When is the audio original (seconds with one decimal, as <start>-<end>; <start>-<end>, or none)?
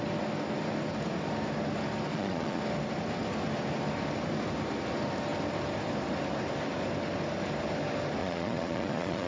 0.0-2.1; 2.6-8.2